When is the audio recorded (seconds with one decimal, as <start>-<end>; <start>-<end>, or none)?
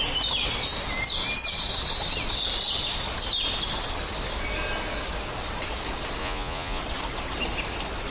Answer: 0.0-6.2; 6.8-8.1